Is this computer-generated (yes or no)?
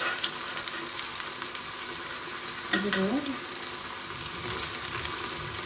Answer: yes